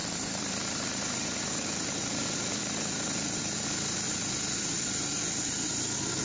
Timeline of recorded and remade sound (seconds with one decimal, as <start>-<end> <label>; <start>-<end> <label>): 0.0-6.2 recorded